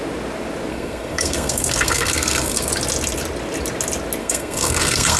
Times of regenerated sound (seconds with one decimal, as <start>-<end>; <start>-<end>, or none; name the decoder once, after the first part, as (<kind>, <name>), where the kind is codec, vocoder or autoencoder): 0.7-2.7 (codec, SNAC); 4.2-5.2